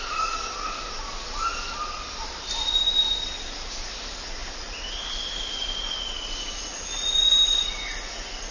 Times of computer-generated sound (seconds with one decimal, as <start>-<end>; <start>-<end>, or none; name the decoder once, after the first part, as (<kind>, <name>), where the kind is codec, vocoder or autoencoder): none